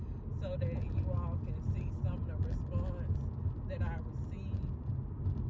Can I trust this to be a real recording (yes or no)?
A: yes